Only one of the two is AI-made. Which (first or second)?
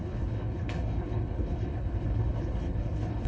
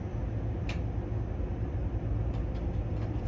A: first